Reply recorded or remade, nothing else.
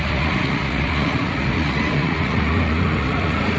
remade